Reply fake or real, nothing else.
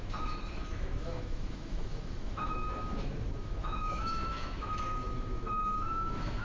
fake